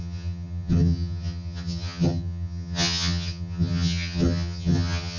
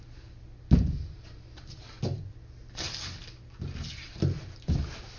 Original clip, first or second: second